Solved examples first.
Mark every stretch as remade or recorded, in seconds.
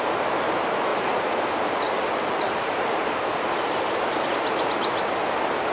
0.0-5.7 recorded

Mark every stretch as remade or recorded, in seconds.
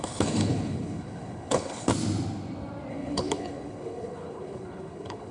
0.0-1.9 remade; 1.9-2.9 recorded; 2.9-5.3 remade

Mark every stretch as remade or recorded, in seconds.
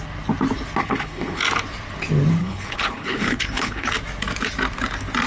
0.0-0.8 recorded; 0.8-1.4 remade; 1.4-2.4 recorded; 2.4-3.9 remade; 3.9-5.3 recorded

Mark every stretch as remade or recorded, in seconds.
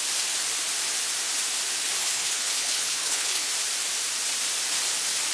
0.0-2.0 recorded; 2.0-3.5 remade; 3.5-5.3 recorded